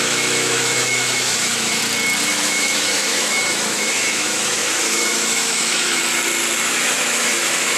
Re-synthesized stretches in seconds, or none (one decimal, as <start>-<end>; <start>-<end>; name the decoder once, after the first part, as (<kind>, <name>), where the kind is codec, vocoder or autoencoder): 0.0-1.8 (autoencoder, DAC-VAE); 2.3-6.0; 6.7-7.8